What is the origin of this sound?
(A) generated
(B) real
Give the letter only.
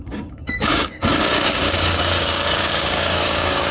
A